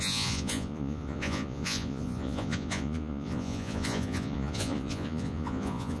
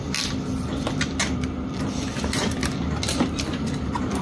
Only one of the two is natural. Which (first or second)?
second